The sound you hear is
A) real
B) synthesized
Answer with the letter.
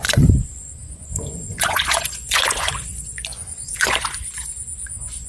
B